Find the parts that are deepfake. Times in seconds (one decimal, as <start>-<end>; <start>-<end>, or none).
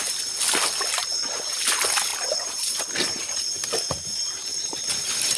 2.1-5.4